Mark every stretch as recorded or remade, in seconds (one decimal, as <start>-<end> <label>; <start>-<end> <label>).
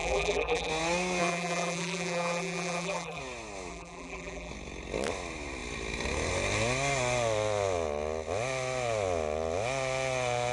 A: 0.0-0.7 remade; 0.7-1.2 recorded; 1.2-3.2 remade; 3.2-3.7 recorded; 3.7-4.5 remade; 4.5-10.5 recorded